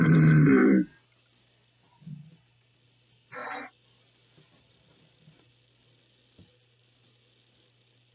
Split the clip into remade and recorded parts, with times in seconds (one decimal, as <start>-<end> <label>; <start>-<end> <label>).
0.0-8.1 recorded